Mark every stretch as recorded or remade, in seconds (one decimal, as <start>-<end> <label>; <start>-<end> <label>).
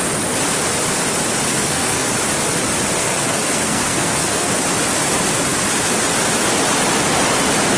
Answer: 0.0-1.5 recorded; 1.5-2.1 remade; 2.1-3.0 recorded; 3.0-4.5 remade; 4.5-7.8 recorded